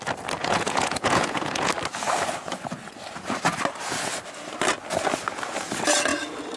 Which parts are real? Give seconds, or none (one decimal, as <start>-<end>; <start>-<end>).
0.0-0.4; 1.7-6.6